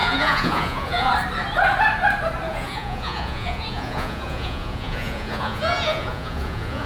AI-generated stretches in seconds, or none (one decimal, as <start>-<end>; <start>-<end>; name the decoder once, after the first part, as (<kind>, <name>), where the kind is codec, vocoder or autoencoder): 0.0-1.1 (vocoder, Vocos); 2.5-6.9